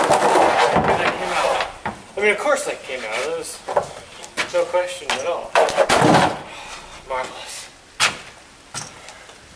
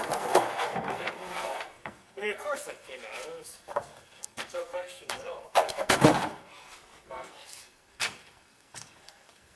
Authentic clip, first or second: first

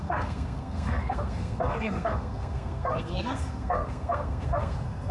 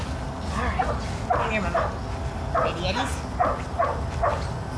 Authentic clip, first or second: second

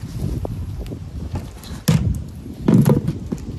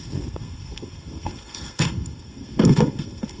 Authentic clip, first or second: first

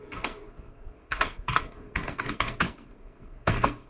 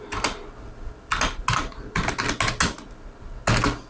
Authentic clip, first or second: second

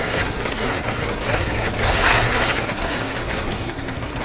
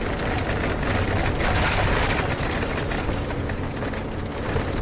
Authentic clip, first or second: second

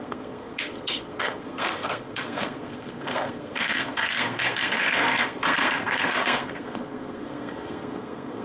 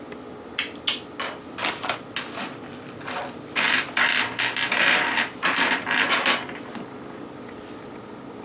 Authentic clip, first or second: second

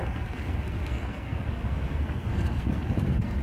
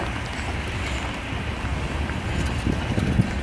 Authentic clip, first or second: second